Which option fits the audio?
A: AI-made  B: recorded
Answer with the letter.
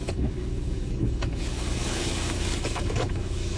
A